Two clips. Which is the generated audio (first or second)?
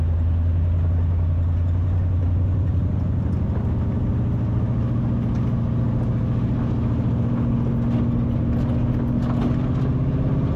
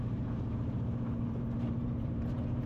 second